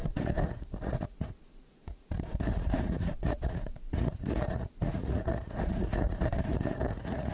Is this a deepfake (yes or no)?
yes